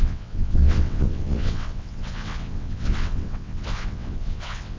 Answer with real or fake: fake